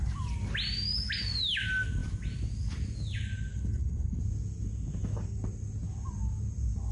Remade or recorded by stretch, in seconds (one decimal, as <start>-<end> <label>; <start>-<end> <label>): 0.0-3.5 recorded; 3.5-4.2 remade; 4.2-6.9 recorded